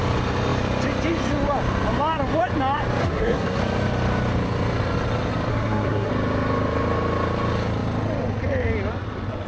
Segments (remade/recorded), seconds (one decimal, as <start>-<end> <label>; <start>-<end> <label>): 0.0-3.0 recorded; 3.0-3.6 remade; 3.6-5.5 recorded; 5.5-6.1 remade; 6.1-9.5 recorded